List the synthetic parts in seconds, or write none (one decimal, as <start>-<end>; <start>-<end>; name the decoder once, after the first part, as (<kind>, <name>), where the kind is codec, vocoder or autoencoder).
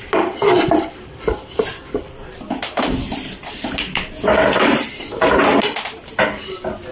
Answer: 0.0-6.9 (vocoder, BigVGAN v2)